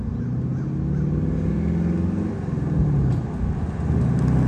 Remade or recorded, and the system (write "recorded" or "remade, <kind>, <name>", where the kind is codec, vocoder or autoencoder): recorded